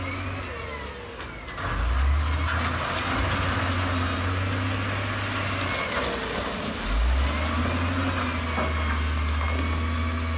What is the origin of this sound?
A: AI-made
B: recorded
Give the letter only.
B